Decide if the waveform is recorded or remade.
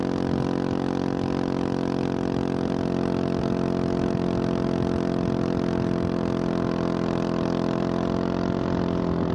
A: recorded